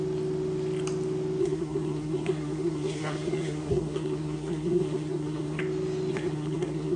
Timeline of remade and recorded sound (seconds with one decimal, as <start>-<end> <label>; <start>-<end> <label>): 0.0-1.4 recorded; 1.4-5.6 remade; 5.6-6.1 recorded; 6.1-7.0 remade